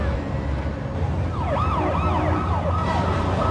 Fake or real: real